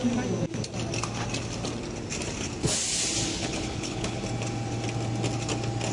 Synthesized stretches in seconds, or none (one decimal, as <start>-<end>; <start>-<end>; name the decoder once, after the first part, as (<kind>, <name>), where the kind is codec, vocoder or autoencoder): 3.3-4.2 (codec, HILCodec)